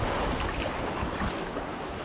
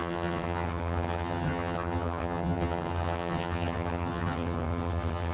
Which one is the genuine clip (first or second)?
first